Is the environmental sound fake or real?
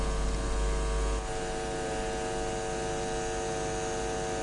real